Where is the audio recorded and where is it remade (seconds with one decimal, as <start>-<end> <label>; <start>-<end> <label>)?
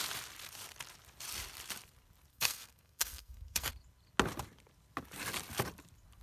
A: 0.0-2.3 recorded; 2.3-3.7 remade; 3.7-6.2 recorded